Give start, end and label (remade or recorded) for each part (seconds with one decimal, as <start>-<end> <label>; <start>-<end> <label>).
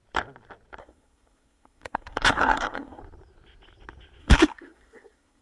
0.0-0.8 recorded; 0.8-3.0 remade; 3.0-4.2 recorded; 4.2-5.4 remade